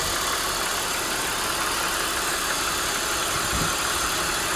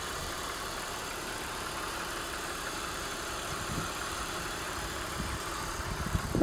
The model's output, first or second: second